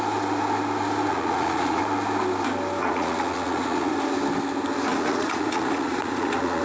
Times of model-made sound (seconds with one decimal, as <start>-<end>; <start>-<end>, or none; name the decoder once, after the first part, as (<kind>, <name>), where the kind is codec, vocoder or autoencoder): 1.1-1.8 (vocoder, Vocos); 2.8-3.9; 4.9-6.6